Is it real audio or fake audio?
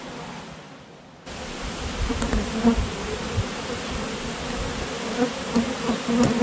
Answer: real